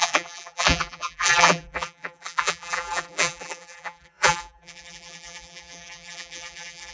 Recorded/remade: remade